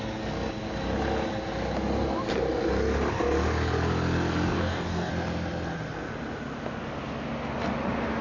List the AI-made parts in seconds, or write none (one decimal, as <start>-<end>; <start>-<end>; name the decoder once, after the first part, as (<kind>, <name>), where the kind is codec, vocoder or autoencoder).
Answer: 4.5-5.1 (codec, DAC)